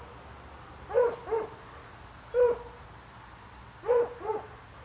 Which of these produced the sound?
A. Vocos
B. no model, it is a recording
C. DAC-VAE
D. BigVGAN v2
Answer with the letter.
B